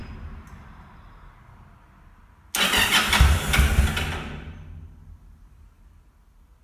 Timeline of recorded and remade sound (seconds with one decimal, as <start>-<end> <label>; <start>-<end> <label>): 0.0-0.9 remade; 0.9-6.6 recorded